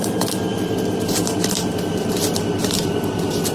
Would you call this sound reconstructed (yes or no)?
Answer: no